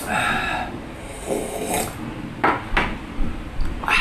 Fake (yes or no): no